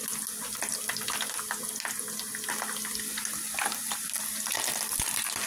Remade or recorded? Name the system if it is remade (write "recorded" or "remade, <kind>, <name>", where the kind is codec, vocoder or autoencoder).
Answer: recorded